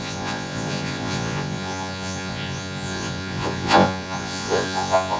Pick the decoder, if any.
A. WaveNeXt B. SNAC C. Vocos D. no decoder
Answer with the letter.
C